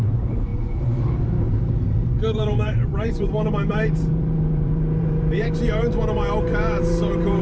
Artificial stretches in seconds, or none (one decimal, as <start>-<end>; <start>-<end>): 0.0-7.4